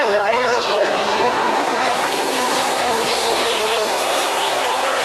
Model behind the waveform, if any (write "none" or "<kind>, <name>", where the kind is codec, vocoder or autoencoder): codec, SNAC